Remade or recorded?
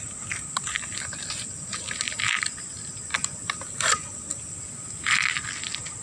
recorded